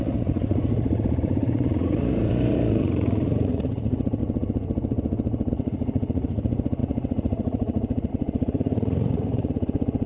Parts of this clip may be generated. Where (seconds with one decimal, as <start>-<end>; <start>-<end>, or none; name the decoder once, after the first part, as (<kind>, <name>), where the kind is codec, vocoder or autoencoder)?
0.0-4.2 (vocoder, Vocos); 5.5-10.1